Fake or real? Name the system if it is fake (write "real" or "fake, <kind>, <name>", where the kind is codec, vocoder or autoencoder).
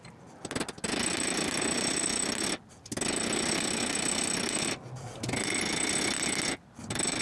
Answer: real